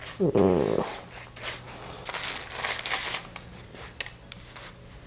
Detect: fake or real real